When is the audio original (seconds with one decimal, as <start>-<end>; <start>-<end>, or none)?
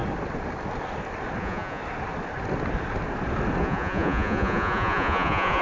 0.0-1.4; 1.8-3.6